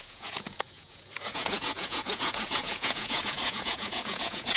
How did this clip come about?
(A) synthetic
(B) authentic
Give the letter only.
A